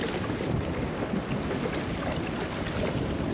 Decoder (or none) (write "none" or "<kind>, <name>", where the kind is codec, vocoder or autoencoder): none